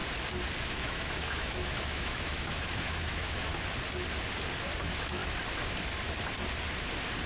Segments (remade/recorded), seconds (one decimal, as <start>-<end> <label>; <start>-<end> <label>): 0.0-0.6 recorded; 0.6-3.5 remade; 3.5-4.8 recorded; 4.8-5.2 remade; 5.2-7.3 recorded